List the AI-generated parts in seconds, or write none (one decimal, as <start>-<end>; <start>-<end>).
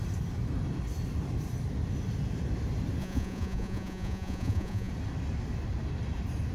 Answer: 3.0-4.9